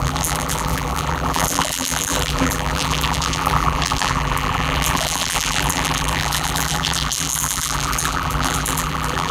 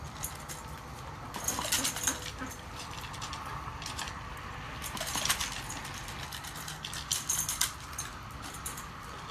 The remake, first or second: first